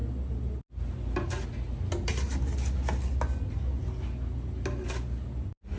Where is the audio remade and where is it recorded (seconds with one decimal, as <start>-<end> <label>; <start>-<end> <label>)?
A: 0.0-5.8 recorded